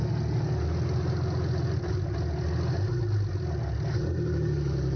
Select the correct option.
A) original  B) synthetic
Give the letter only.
A